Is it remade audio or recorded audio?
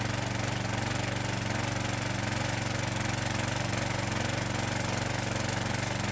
recorded